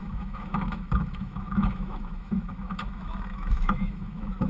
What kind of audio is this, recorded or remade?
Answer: remade